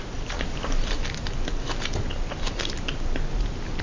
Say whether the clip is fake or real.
real